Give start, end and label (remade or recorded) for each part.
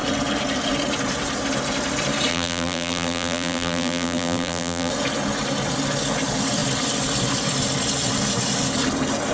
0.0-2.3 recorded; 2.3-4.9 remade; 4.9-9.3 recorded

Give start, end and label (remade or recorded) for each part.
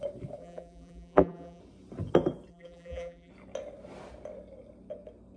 0.0-0.4 recorded; 0.4-1.6 remade; 1.6-2.5 recorded; 2.5-3.3 remade; 3.3-5.4 recorded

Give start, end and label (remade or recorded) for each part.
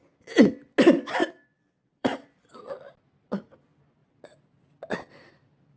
0.0-1.2 recorded; 1.2-3.0 remade; 3.0-5.8 recorded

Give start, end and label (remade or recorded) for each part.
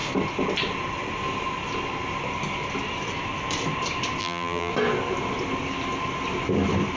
0.0-4.2 recorded; 4.2-4.7 remade; 4.7-7.0 recorded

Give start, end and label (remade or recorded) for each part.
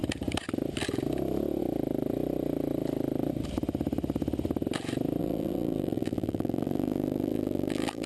0.0-5.2 recorded; 5.2-8.1 remade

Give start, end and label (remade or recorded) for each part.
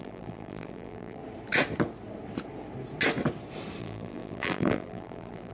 0.0-1.2 remade; 1.2-3.8 recorded; 3.8-5.5 remade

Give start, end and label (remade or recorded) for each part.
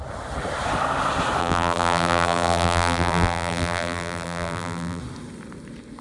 0.0-1.4 recorded; 1.4-5.0 remade; 5.0-6.0 recorded